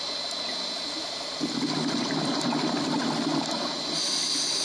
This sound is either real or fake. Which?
real